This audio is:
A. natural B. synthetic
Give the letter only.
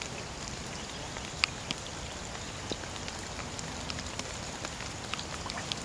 A